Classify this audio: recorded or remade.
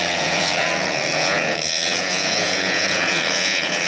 remade